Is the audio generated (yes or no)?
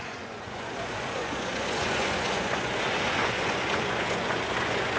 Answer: yes